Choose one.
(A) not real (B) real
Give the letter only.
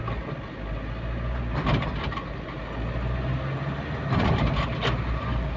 B